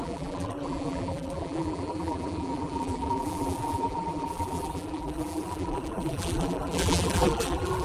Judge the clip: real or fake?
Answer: fake